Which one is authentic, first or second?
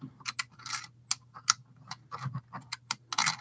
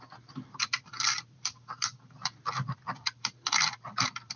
first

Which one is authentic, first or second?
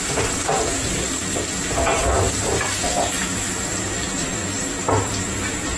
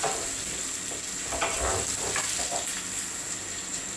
second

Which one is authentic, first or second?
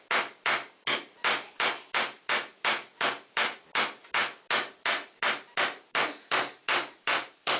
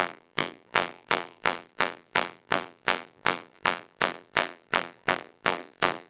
first